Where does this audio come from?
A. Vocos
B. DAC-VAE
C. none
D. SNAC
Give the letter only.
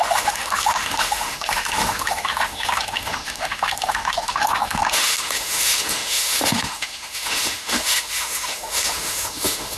B